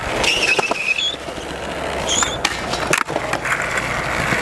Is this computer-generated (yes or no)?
no